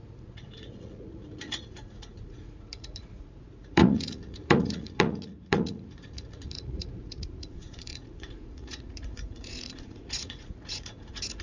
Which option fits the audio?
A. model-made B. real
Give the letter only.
A